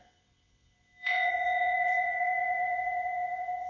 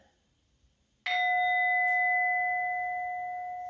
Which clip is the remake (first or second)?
first